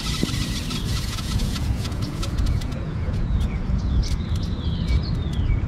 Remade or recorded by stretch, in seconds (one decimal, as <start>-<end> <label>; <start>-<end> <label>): 0.0-0.9 recorded; 0.9-4.0 remade; 4.0-5.7 recorded